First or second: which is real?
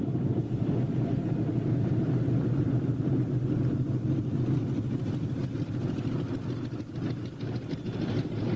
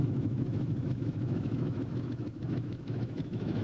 first